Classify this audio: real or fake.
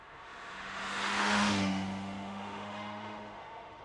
fake